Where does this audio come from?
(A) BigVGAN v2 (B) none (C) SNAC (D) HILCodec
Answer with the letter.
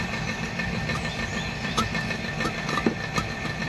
B